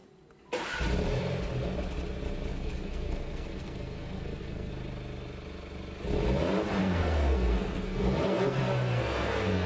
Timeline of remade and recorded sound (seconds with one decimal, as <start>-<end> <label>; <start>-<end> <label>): 0.0-2.5 recorded; 2.5-4.7 remade; 4.7-6.8 recorded; 6.8-9.7 remade